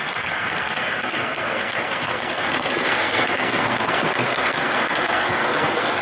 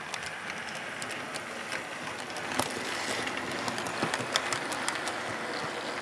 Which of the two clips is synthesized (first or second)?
first